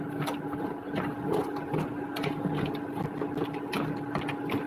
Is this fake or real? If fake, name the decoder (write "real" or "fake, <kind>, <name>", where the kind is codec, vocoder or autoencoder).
real